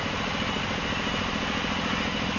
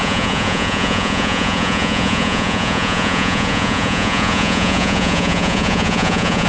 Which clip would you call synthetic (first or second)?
second